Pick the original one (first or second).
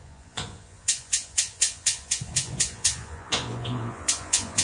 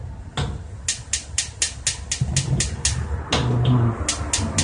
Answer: second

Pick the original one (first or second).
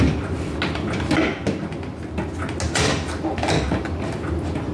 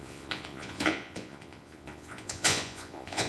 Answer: first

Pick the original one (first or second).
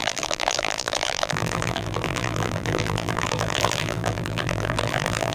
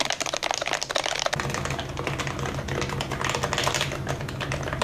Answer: second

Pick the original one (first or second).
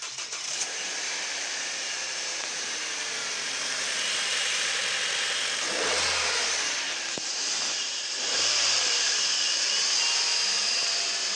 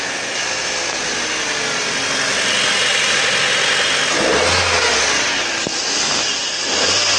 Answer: second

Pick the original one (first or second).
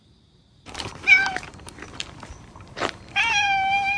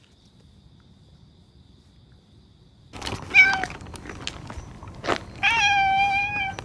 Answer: second